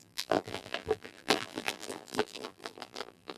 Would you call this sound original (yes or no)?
no